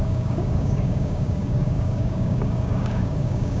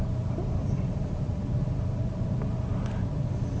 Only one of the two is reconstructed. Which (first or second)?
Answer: first